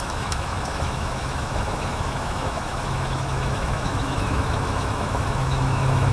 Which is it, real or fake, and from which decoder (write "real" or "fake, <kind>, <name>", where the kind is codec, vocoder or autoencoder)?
fake, autoencoder, DAC-VAE